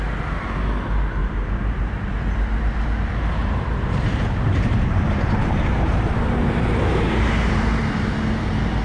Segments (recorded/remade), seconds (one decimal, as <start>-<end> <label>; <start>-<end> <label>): 0.0-1.2 recorded; 1.2-2.1 remade; 2.1-3.4 recorded; 3.4-7.8 remade; 7.8-8.8 recorded